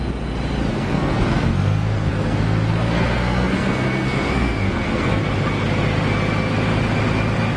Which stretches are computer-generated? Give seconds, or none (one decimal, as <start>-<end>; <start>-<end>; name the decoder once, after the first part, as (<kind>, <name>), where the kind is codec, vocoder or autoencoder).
0.7-5.2 (codec, SNAC)